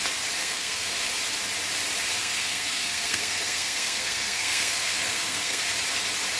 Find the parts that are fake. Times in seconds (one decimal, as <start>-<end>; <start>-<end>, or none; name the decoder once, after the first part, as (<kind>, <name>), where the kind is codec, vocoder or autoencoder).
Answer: 0.4-1.1 (codec, SNAC); 2.2-5.6